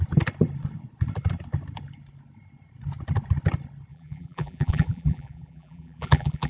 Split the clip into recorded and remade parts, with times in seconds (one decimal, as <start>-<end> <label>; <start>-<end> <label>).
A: 0.0-3.9 recorded; 3.9-6.5 remade

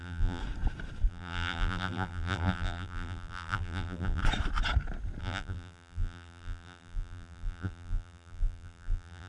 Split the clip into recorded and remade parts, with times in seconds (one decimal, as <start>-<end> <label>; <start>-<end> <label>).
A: 0.0-0.4 remade; 0.4-1.1 recorded; 1.1-4.2 remade; 4.2-5.2 recorded; 5.2-9.3 remade

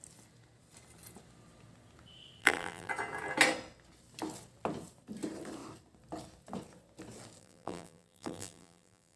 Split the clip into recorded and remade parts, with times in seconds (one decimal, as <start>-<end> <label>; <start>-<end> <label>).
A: 0.0-2.4 recorded; 2.4-2.9 remade; 2.9-7.4 recorded; 7.4-9.2 remade

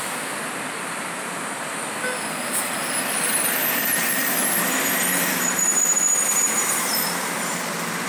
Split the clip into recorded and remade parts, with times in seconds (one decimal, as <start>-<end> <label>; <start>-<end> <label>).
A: 0.0-3.6 recorded; 3.6-8.1 remade

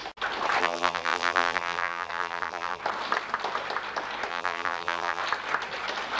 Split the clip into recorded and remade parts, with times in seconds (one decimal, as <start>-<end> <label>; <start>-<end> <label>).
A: 0.0-0.6 recorded; 0.6-2.8 remade; 2.8-4.3 recorded; 4.3-5.2 remade; 5.2-6.2 recorded